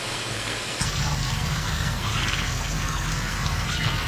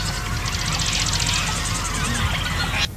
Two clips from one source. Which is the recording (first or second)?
second